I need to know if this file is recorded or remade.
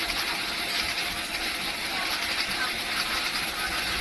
recorded